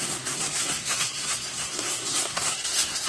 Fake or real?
fake